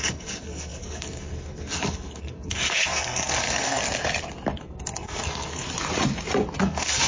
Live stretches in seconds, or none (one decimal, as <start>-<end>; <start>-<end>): 3.8-4.6; 5.6-6.6